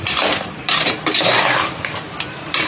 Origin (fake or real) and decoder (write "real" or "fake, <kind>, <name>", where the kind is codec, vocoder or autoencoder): fake, vocoder, BigVGAN v2